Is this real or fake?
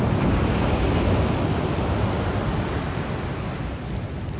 real